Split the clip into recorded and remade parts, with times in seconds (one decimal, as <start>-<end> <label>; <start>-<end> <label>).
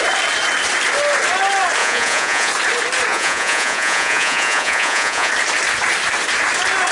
0.0-1.8 recorded; 1.8-2.5 remade; 2.5-3.1 recorded; 3.1-5.3 remade; 5.3-6.9 recorded